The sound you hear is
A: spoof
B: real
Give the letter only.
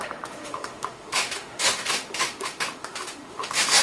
A